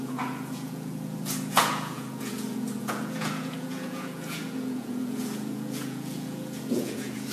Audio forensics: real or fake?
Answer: fake